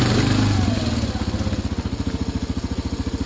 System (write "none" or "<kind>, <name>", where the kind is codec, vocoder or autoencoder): none